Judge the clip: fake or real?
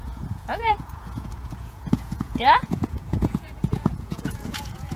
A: fake